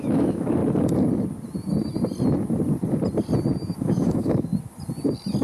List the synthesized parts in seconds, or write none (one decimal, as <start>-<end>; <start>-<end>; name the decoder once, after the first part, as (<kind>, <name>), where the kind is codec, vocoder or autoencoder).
0.0-0.6 (autoencoder, DAC-VAE); 3.8-4.5